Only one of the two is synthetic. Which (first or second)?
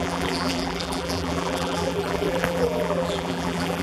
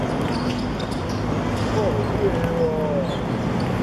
first